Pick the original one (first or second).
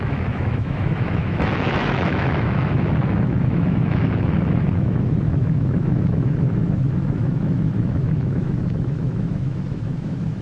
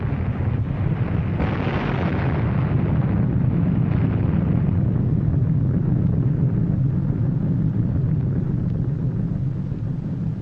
second